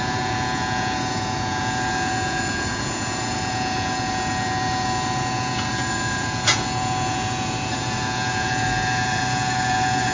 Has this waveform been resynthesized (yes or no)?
yes